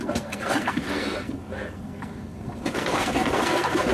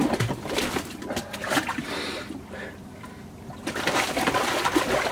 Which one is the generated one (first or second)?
first